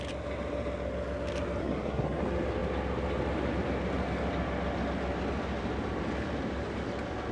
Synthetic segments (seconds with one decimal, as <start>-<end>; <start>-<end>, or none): 1.6-2.2